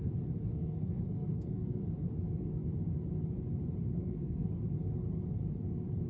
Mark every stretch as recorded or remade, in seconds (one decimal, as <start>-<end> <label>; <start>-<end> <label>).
0.0-0.5 recorded; 0.5-1.8 remade; 1.8-3.9 recorded; 3.9-4.6 remade; 4.6-6.1 recorded

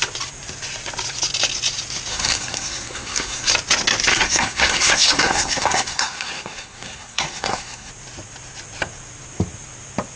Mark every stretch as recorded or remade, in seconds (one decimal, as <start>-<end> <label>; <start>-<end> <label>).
0.0-2.1 recorded; 2.1-3.5 remade; 3.5-4.1 recorded; 4.1-7.9 remade; 7.9-10.2 recorded

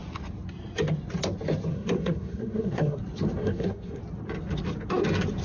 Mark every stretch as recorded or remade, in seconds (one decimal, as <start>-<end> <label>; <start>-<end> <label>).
0.0-1.7 recorded; 1.7-3.0 remade; 3.0-3.4 recorded; 3.4-4.0 remade; 4.0-5.4 recorded

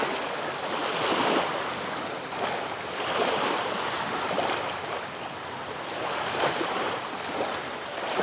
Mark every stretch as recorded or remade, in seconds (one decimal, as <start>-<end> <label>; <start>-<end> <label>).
0.0-8.2 recorded

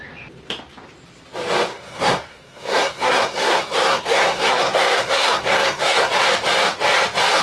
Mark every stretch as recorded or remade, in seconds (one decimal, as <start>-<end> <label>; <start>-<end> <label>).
0.0-1.7 recorded; 1.7-6.1 remade; 6.1-7.4 recorded